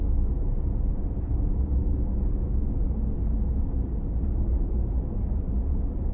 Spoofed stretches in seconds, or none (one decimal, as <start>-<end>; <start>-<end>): 0.0-6.1